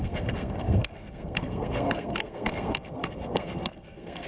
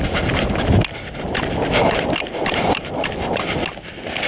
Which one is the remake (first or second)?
first